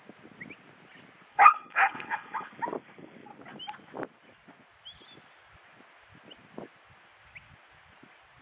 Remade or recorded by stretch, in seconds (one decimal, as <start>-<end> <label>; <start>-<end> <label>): 0.0-1.3 recorded; 1.3-2.5 remade; 2.5-8.4 recorded